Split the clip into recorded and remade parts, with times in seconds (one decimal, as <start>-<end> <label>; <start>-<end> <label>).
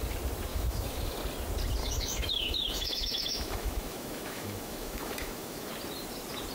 0.0-0.5 recorded; 0.5-1.2 remade; 1.2-1.8 recorded; 1.8-5.7 remade; 5.7-6.5 recorded